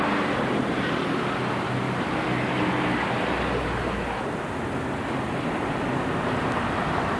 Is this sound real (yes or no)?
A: yes